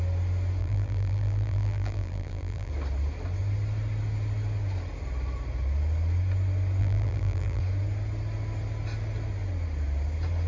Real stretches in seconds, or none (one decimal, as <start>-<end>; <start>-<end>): 0.0-0.6; 2.7-6.8; 7.6-10.5